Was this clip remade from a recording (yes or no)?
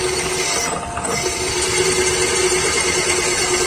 no